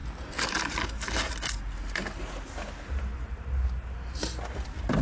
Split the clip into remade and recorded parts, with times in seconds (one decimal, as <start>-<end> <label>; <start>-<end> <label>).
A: 0.0-5.0 recorded